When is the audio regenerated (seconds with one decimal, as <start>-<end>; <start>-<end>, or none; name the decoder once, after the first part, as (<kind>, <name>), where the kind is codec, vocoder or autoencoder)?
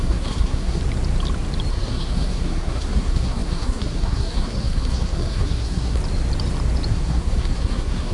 0.0-0.8 (codec, SNAC); 1.7-6.0; 6.9-8.1